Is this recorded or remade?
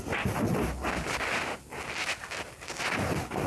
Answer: recorded